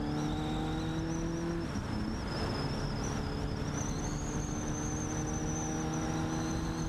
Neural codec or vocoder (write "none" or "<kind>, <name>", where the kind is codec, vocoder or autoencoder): none